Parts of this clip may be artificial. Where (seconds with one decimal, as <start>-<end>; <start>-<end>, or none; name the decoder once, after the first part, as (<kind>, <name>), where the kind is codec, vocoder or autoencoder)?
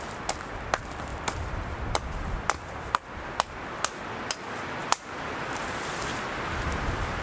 1.1-2.9 (vocoder, BigVGAN v2); 4.8-6.2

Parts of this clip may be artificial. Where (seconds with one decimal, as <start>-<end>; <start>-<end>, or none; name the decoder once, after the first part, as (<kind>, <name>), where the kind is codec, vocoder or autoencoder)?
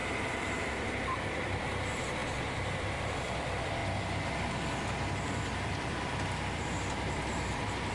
0.0-7.9 (vocoder, BigVGAN v2)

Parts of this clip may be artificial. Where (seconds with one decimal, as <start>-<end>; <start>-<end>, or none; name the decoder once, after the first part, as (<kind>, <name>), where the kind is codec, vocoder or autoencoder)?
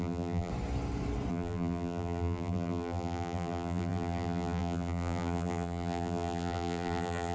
0.0-0.5 (vocoder, BigVGAN v2); 1.3-7.3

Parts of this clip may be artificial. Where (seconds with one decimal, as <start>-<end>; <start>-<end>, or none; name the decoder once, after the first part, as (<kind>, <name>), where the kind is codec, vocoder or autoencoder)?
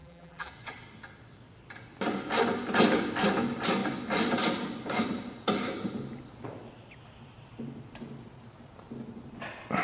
0.0-0.5 (vocoder, BigVGAN v2)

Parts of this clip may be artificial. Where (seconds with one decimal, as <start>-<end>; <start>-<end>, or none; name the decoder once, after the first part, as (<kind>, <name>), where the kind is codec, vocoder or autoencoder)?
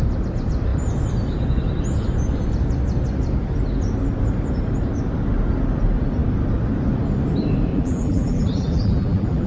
7.7-9.5 (vocoder, BigVGAN v2)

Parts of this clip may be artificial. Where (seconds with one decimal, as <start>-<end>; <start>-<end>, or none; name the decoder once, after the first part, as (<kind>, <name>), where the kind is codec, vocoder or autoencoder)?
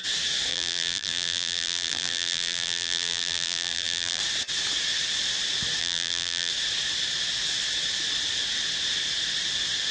0.5-4.2 (vocoder, BigVGAN v2); 5.8-6.5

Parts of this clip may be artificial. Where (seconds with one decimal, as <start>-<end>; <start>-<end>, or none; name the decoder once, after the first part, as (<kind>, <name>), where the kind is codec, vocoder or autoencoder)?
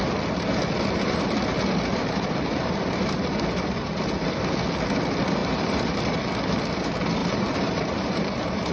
1.9-4.4 (vocoder, BigVGAN v2); 5.4-6.0; 7.2-8.7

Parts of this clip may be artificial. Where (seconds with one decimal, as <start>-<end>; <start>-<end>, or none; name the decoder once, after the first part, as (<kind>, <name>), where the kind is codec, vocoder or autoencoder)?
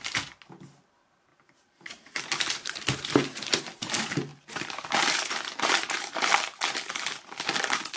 1.3-3.9 (vocoder, BigVGAN v2); 4.3-7.3